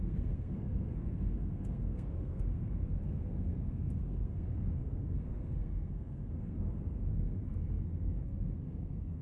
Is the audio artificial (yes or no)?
yes